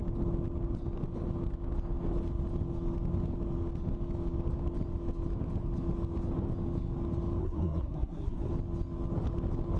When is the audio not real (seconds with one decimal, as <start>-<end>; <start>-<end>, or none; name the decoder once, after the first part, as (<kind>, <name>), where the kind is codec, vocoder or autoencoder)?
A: 7.4-8.5 (codec, SNAC)